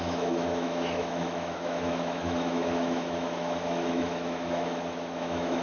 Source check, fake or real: fake